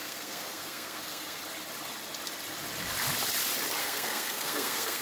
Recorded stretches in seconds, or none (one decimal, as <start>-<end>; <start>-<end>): 1.4-3.8